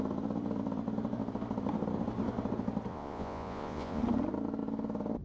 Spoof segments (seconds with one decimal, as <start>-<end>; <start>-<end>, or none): 2.9-4.0